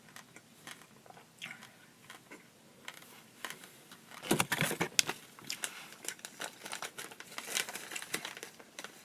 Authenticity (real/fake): real